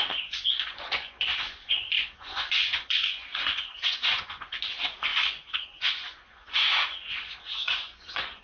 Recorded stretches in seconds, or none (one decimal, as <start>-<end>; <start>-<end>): none